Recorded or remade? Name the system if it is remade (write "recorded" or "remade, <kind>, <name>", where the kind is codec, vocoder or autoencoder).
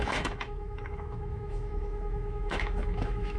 remade, autoencoder, DAC-VAE